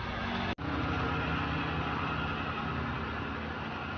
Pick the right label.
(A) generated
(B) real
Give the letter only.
B